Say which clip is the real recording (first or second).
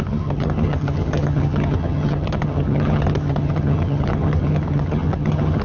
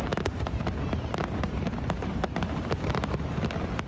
second